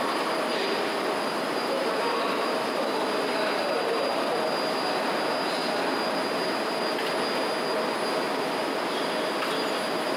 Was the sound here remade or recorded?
recorded